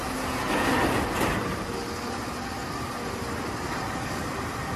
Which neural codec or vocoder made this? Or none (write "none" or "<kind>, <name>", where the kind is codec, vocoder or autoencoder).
none